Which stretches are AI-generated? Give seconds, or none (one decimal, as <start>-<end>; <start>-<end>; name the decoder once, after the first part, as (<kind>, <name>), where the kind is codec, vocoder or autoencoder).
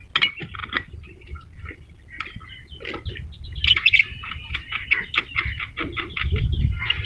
none